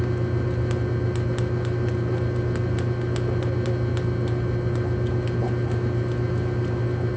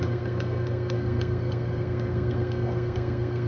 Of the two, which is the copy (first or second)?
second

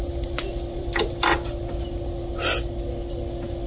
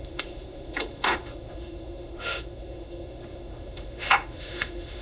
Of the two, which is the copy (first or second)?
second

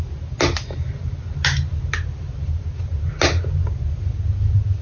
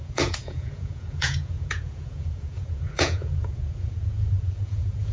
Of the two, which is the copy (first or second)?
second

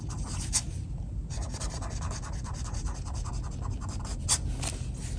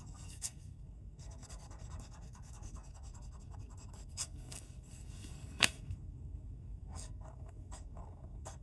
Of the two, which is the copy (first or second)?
second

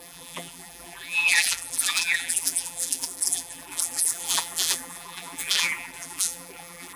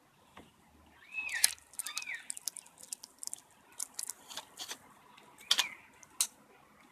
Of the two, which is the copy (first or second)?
first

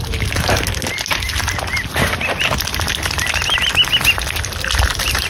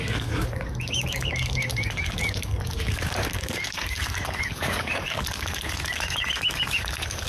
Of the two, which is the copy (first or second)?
second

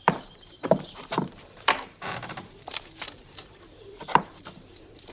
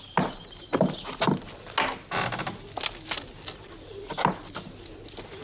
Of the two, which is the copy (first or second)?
first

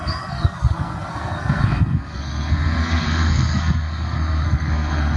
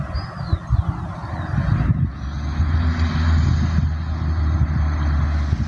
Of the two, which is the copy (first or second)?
first